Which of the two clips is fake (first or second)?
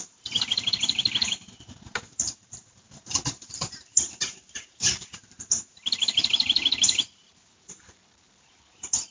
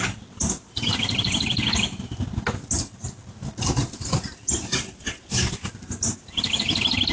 first